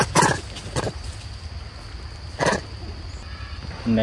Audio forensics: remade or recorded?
recorded